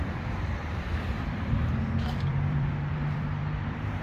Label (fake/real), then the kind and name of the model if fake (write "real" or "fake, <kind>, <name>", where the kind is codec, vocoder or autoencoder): fake, vocoder, BigVGAN v2